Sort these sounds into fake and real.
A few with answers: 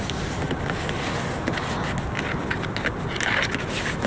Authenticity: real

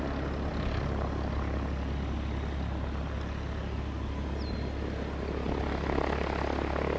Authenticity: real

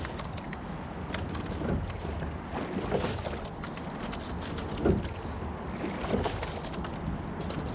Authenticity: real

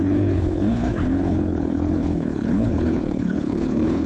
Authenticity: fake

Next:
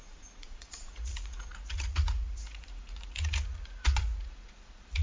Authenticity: fake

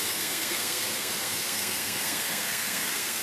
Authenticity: fake